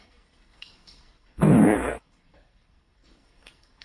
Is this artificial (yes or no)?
yes